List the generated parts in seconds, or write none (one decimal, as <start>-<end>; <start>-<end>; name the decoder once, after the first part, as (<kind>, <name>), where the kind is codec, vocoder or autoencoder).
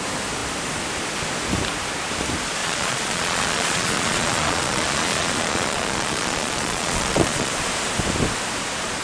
2.6-7.5 (vocoder, Vocos)